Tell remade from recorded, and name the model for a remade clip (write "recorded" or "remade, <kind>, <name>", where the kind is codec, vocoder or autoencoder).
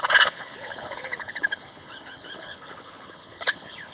remade, codec, HILCodec